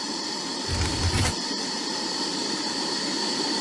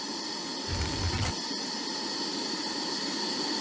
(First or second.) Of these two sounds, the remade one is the first